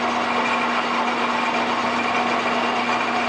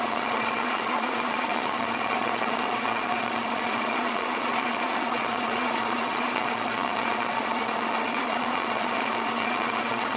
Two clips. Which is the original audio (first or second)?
first